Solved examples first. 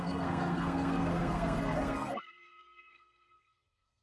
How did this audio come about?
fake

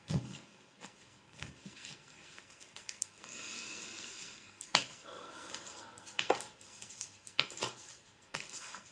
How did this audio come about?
fake